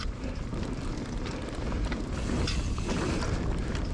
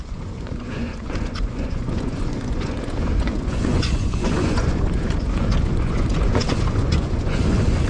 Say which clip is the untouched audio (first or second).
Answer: first